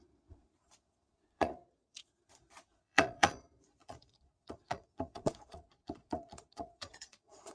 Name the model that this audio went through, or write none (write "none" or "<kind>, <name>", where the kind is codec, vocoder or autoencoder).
vocoder, Vocos